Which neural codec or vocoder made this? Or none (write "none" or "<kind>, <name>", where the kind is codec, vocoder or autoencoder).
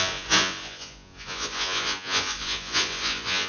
vocoder, Vocos